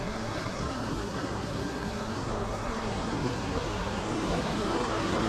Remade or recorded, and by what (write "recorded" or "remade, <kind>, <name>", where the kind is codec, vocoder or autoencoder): remade, codec, SNAC